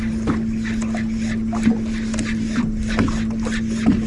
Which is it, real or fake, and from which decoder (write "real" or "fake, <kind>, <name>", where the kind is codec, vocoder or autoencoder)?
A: real